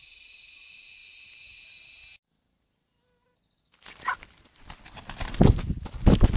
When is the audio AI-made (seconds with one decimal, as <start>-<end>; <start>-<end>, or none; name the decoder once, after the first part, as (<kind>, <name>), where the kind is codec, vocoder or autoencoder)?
none